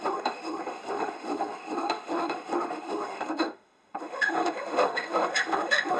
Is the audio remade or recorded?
remade